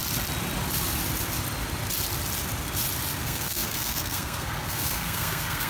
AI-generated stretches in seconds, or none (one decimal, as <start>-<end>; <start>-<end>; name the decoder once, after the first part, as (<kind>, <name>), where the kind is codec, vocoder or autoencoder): 3.2-5.7 (codec, SNAC)